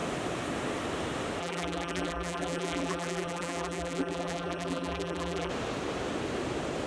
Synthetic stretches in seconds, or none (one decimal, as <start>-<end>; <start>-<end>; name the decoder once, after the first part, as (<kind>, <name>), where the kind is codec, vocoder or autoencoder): 1.4-5.5 (vocoder, BigVGAN v2)

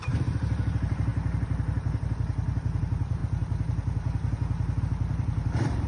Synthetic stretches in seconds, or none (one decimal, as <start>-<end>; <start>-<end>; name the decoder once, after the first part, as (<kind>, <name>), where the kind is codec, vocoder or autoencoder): 0.0-1.1 (vocoder, BigVGAN v2); 2.8-3.2; 4.8-5.9

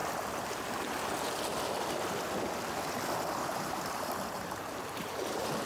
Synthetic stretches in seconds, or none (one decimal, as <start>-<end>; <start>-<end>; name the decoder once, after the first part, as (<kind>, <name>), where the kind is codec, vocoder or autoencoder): 3.4-5.7 (vocoder, BigVGAN v2)

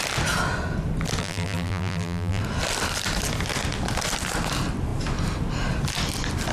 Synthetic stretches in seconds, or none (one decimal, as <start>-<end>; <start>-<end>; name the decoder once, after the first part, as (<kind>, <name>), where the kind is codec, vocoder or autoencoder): 1.2-2.4 (vocoder, BigVGAN v2)

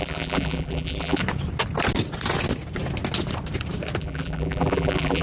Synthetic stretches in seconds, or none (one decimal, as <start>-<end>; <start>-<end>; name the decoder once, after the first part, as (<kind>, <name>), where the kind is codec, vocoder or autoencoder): 0.0-1.2 (vocoder, BigVGAN v2); 4.0-5.2

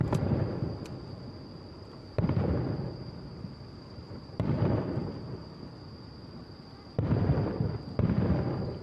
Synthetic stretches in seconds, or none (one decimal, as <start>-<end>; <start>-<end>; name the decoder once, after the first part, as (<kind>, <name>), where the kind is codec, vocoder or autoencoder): 3.3-4.6 (vocoder, BigVGAN v2)